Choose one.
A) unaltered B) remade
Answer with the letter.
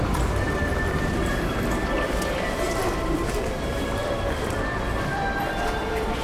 B